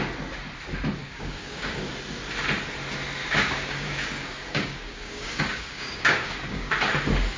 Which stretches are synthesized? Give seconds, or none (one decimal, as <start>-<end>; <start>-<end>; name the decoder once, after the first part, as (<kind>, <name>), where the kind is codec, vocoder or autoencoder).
1.0-1.9 (codec, DAC); 3.2-6.7